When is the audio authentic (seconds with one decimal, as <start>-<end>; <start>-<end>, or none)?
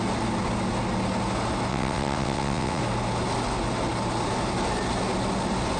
0.0-1.7; 2.8-5.8